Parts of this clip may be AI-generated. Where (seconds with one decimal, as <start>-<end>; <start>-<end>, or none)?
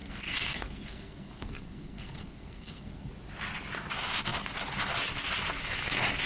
0.0-3.1